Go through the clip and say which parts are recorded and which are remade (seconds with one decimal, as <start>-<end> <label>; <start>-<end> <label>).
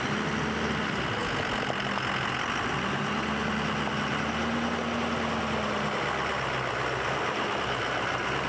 0.0-8.5 recorded